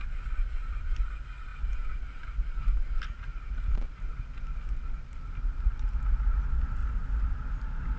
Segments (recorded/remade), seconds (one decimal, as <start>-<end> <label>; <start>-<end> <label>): 0.0-6.8 recorded; 6.8-8.0 remade